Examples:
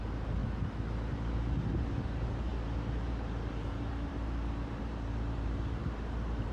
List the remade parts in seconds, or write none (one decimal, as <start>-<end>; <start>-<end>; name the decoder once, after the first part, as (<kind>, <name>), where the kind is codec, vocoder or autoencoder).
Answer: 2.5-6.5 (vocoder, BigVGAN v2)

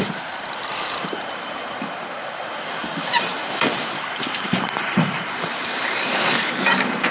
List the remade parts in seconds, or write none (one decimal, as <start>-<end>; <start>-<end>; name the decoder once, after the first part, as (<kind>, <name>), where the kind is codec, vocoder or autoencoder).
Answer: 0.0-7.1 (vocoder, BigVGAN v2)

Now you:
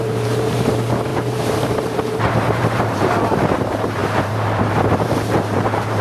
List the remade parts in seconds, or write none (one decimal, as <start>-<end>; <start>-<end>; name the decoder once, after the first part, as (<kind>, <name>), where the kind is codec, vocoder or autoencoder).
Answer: 0.0-6.0 (vocoder, BigVGAN v2)

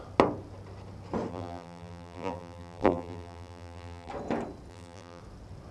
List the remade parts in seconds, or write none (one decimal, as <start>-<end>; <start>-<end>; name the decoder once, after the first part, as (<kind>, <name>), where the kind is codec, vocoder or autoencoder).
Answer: 1.3-4.1 (vocoder, BigVGAN v2); 4.7-5.2

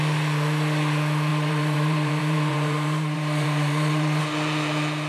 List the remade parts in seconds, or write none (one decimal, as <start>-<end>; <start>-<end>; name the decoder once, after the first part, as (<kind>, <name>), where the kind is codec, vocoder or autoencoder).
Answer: 1.3-4.2 (vocoder, BigVGAN v2)

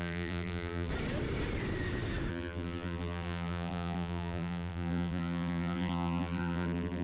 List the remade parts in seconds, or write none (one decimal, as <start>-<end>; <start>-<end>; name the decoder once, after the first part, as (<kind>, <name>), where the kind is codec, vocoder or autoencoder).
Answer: 0.0-0.9 (vocoder, BigVGAN v2); 2.3-7.0

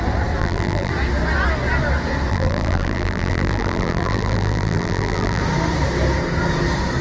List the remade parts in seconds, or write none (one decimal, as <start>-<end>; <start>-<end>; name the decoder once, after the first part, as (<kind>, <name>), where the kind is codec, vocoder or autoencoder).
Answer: 0.4-0.9 (vocoder, BigVGAN v2); 2.3-5.4